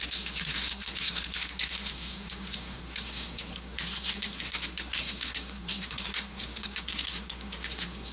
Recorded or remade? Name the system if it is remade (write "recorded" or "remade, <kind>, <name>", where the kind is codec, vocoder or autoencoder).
remade, codec, SNAC